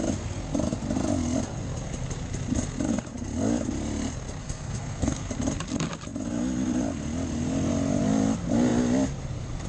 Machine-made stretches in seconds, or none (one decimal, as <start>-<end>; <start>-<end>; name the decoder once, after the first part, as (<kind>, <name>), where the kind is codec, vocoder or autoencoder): 4.4-5.3 (codec, SNAC)